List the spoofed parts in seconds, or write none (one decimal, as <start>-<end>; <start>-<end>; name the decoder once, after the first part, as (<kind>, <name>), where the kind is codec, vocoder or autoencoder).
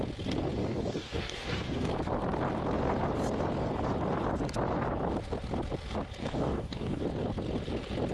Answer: 0.6-1.9 (codec, DAC); 6.2-7.0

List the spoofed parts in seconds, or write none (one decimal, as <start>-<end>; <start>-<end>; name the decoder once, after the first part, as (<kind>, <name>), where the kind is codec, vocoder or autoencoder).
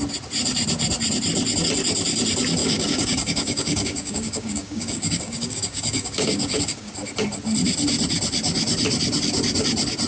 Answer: 2.6-6.9 (codec, DAC)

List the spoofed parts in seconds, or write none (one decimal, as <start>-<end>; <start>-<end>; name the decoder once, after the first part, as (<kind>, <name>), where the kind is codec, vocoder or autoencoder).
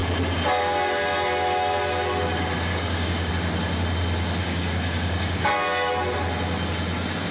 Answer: 2.7-3.3 (codec, DAC); 4.4-5.5